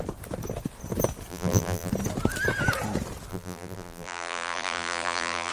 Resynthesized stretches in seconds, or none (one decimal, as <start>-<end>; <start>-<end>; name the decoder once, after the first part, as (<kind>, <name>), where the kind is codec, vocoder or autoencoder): 1.3-1.9 (vocoder, BigVGAN v2); 3.3-5.5